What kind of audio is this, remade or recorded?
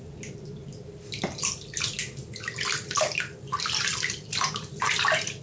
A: recorded